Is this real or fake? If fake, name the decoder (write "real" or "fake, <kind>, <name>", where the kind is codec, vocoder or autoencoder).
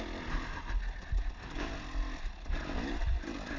real